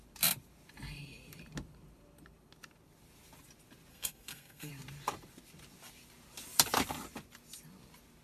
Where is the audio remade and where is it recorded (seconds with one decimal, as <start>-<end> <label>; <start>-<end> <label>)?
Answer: 0.0-3.9 recorded; 3.9-4.7 remade; 4.7-8.2 recorded

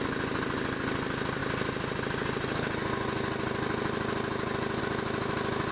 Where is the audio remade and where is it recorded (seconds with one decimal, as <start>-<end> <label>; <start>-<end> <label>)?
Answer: 0.0-5.7 recorded